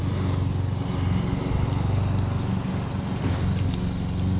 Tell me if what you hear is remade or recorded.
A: recorded